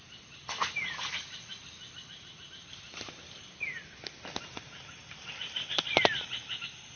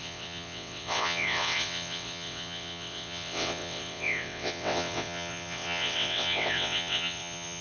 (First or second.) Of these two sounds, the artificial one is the second